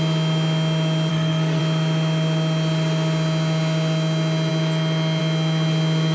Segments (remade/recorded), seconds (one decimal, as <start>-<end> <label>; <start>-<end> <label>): 0.0-1.1 recorded; 1.1-1.6 remade; 1.6-6.1 recorded